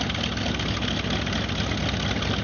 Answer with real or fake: real